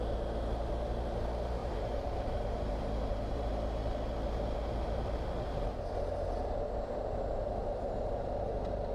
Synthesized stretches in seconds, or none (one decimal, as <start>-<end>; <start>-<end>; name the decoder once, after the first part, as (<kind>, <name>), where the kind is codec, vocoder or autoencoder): 1.6-3.5 (vocoder, BigVGAN v2)